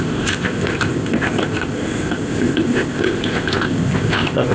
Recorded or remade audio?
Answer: remade